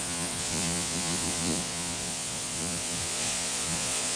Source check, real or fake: fake